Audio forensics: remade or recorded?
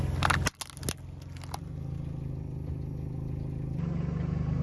recorded